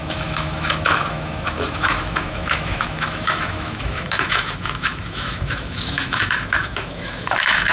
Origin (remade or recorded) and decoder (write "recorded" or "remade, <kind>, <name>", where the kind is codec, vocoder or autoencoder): remade, autoencoder, DAC-VAE